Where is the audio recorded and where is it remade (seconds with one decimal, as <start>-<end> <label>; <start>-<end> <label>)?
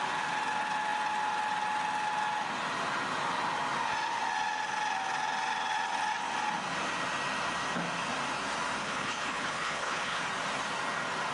0.0-8.8 recorded; 8.8-10.2 remade; 10.2-11.3 recorded